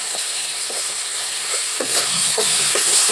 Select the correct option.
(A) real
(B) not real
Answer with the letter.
B